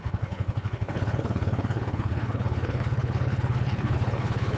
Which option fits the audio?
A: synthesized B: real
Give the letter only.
A